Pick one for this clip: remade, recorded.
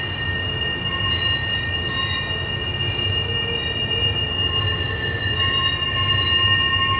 recorded